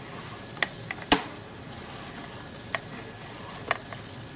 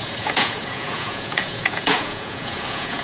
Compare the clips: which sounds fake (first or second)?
second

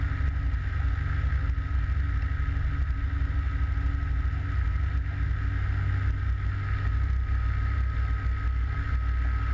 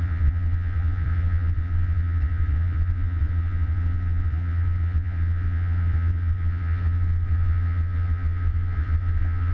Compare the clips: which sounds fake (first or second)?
second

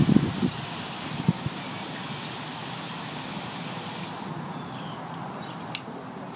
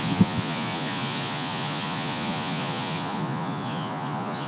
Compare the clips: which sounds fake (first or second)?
second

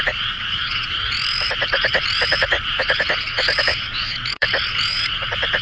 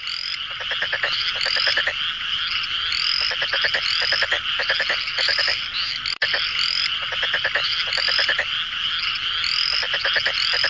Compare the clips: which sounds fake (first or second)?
first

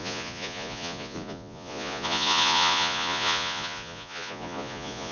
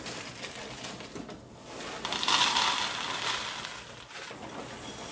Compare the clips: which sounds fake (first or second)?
first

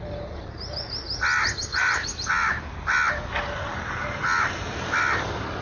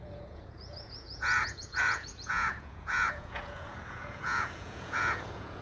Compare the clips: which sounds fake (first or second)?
second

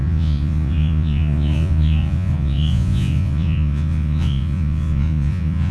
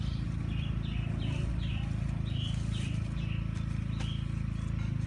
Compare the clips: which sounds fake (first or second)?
first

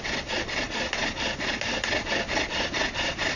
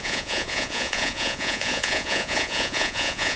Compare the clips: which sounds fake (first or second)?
second